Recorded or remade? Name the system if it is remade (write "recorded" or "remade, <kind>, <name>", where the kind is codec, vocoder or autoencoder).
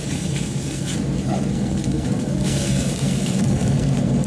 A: remade, codec, SNAC